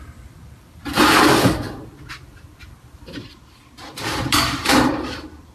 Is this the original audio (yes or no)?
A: no